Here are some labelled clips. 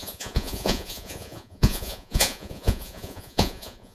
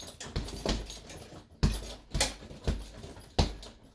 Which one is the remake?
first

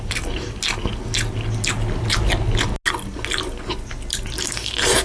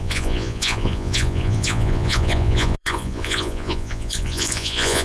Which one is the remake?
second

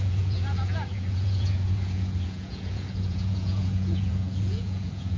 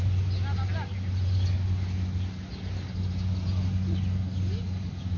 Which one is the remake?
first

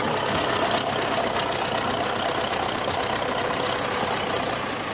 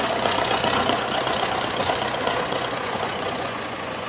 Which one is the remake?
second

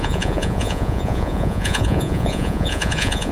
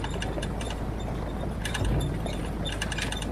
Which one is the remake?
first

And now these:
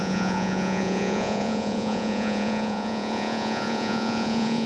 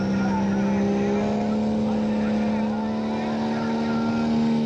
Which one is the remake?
first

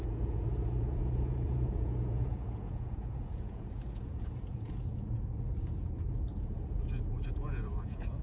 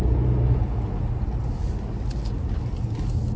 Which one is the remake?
first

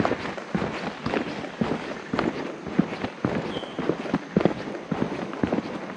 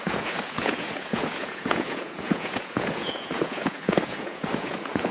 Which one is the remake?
second